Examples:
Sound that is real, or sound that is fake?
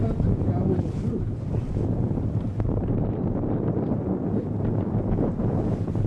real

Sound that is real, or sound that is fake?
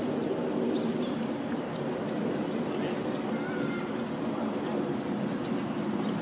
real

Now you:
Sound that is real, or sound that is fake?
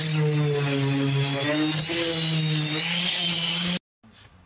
real